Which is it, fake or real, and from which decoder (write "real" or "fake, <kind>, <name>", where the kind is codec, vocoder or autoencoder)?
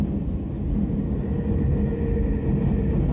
real